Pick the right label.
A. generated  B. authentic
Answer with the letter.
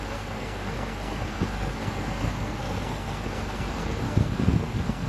A